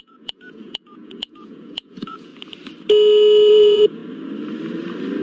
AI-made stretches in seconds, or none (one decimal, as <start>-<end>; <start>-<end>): 0.0-2.3; 3.5-4.0